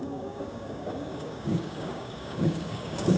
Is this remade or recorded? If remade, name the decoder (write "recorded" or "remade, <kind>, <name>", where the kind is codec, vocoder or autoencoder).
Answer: remade, codec, DAC